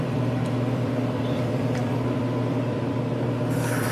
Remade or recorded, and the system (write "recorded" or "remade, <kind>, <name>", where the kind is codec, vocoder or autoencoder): remade, vocoder, BigVGAN v2